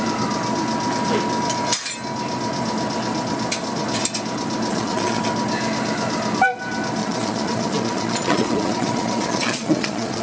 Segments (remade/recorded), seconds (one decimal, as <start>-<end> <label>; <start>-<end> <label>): 0.0-4.7 recorded; 4.7-5.2 remade; 5.2-7.0 recorded; 7.0-10.2 remade